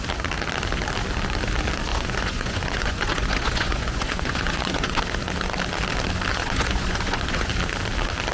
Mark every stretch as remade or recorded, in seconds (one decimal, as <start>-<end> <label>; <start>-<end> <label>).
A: 0.0-1.9 recorded; 1.9-5.0 remade; 5.0-6.3 recorded; 6.3-7.5 remade; 7.5-8.3 recorded